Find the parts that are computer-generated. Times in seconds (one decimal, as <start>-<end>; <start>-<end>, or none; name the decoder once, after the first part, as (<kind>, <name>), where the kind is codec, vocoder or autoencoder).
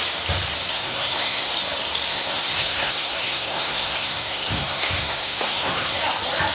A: 0.7-1.5 (codec, SNAC); 2.1-6.0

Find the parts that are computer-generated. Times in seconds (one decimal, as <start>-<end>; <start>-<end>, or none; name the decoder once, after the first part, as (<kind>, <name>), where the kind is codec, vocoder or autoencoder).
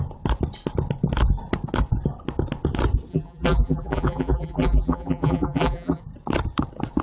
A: 3.1-6.0 (vocoder, BigVGAN v2)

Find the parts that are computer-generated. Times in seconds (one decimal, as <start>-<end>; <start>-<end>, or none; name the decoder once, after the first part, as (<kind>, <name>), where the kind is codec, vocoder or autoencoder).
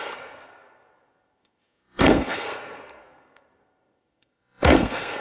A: 0.0-5.2 (codec, SNAC)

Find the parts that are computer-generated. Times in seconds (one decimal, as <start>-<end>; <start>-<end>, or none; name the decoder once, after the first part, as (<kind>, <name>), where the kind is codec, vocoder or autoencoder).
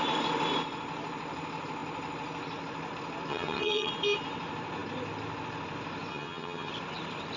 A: 3.3-3.9 (vocoder, HiFi-GAN); 6.1-6.7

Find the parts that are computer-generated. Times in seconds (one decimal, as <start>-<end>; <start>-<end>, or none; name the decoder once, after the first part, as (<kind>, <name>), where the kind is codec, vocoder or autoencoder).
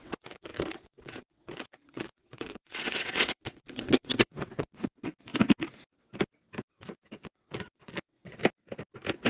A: 0.0-5.3 (vocoder, WaveNeXt); 6.7-8.4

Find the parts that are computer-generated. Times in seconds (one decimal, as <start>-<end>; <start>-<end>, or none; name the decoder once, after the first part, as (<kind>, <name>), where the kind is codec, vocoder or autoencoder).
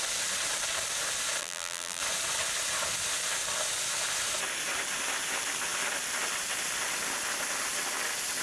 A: 1.4-2.0 (vocoder, BigVGAN v2)